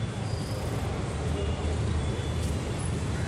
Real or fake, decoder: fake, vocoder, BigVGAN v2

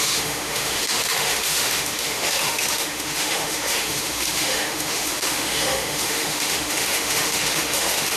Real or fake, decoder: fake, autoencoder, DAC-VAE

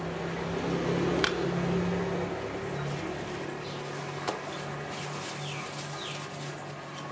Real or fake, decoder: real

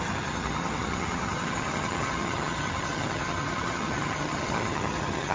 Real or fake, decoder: fake, vocoder, HiFi-GAN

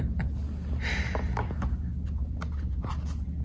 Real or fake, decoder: real